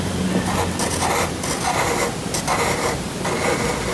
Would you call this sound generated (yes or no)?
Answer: no